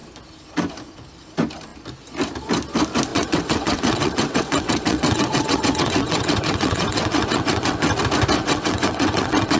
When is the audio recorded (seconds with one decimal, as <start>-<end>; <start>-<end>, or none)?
0.0-3.1; 8.0-8.4